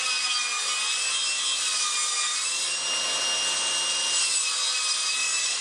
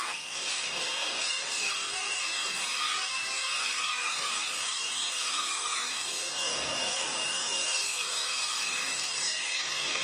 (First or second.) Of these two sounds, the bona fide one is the first